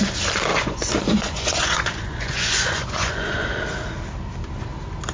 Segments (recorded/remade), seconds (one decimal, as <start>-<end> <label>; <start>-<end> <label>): 0.0-0.5 recorded; 0.5-3.6 remade; 3.6-5.1 recorded